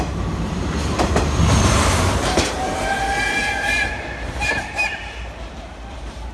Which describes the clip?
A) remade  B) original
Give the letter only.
A